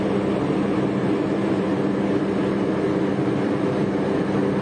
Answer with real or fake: real